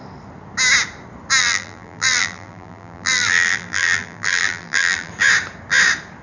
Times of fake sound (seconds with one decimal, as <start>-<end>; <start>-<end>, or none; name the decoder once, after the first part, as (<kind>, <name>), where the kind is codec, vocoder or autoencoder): 1.4-5.1 (vocoder, BigVGAN v2)